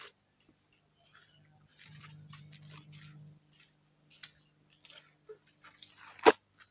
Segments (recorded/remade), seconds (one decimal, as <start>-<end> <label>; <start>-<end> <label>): 0.0-6.7 recorded